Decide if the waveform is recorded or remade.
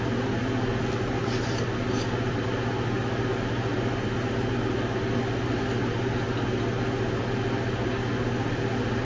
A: recorded